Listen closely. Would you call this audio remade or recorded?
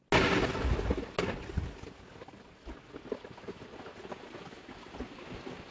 recorded